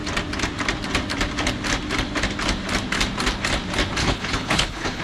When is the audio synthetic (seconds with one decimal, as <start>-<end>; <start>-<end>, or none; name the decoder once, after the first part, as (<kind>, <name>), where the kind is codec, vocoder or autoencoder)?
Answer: 4.0-5.0 (codec, HILCodec)